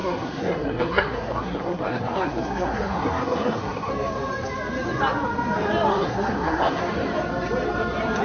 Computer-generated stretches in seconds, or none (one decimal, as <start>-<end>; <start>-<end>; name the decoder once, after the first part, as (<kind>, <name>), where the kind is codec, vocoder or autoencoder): 0.0-3.9 (codec, SNAC); 5.9-6.8